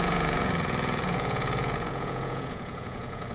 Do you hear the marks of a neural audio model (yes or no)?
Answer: yes